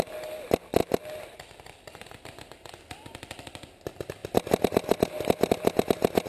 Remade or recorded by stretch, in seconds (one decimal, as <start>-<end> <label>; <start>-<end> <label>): 0.0-6.3 recorded